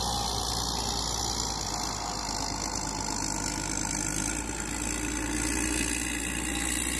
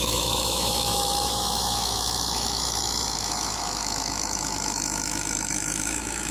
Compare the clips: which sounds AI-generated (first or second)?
second